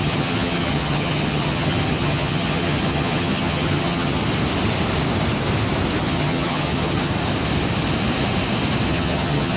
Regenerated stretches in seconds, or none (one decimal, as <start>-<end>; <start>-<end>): 0.0-4.2; 6.0-7.1; 8.9-9.6